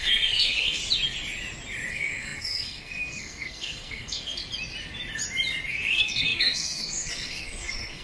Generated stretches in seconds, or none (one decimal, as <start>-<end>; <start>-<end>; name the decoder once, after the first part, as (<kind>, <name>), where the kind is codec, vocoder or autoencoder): 0.0-0.8 (codec, SNAC); 1.9-4.4; 5.7-8.0